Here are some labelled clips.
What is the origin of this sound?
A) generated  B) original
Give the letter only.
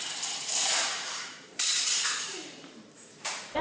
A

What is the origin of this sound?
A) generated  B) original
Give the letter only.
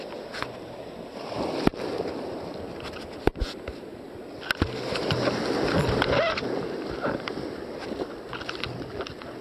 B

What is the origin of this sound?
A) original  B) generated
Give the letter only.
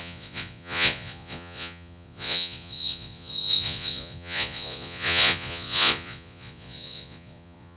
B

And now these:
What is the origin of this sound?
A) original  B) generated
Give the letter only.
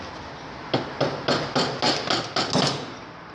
A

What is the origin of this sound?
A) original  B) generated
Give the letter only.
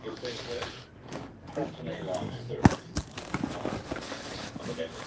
B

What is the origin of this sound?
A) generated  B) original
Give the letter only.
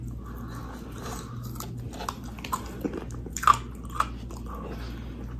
B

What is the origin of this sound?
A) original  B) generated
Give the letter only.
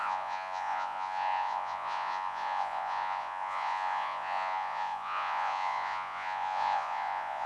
B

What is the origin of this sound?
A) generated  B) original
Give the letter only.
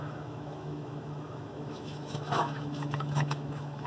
A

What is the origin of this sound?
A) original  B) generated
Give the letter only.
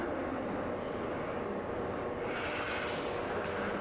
A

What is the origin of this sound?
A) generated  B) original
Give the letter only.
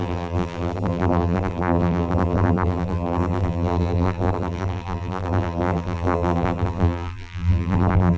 A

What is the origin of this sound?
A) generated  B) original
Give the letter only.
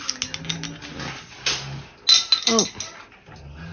B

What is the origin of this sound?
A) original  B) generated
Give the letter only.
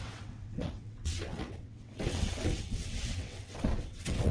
B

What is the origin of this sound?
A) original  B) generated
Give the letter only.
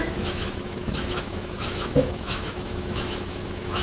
B